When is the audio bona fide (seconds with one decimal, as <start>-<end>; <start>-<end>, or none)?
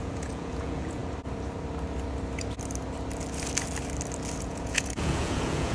1.0-4.4